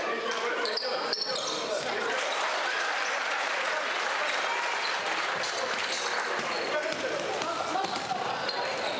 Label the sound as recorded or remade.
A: remade